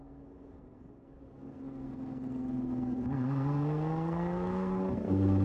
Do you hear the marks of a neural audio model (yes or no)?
yes